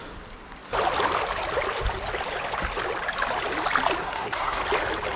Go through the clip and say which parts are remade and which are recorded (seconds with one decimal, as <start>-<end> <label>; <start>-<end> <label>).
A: 0.0-4.0 recorded; 4.0-4.6 remade; 4.6-5.2 recorded